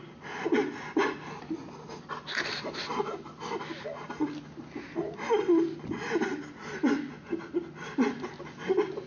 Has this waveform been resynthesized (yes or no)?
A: no